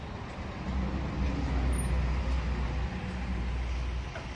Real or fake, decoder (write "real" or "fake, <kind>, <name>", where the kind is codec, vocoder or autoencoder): real